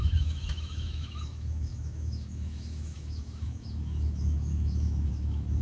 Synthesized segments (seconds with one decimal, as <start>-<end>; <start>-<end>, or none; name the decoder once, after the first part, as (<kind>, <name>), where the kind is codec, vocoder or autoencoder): 0.0-5.6 (autoencoder, DAC-VAE)